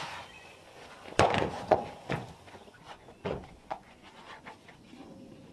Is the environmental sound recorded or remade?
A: remade